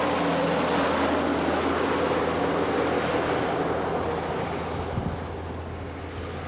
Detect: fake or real real